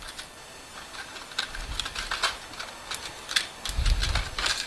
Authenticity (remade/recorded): recorded